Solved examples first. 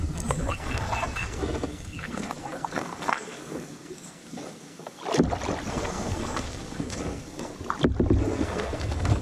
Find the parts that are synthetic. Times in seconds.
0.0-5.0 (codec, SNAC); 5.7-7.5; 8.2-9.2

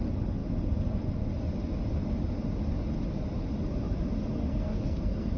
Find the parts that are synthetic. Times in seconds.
4.4-5.4 (codec, SNAC)

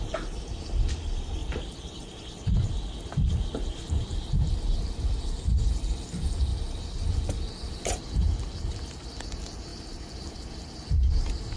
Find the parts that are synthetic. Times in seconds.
none

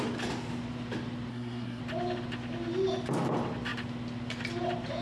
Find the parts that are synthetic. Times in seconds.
1.3-1.8 (codec, SNAC)

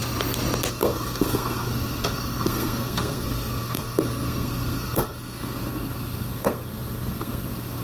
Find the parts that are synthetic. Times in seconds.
0.7-7.8 (codec, SNAC)